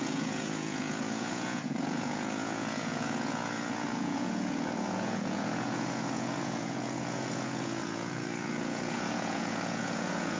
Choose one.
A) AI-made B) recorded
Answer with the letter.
A